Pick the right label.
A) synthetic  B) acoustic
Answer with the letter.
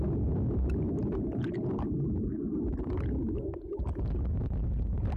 B